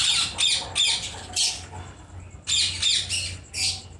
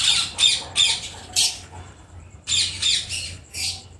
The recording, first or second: first